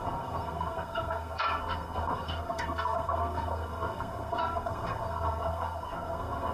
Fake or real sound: fake